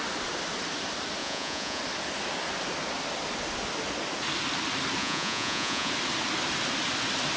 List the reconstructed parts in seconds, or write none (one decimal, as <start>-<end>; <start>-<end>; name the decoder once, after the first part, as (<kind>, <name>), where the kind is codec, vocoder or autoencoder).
1.2-1.8 (vocoder, Vocos); 5.0-5.9